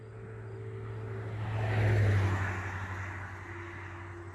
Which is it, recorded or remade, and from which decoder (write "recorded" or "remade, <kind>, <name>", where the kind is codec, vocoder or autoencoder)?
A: recorded